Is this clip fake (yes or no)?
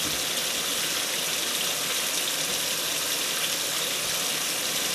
no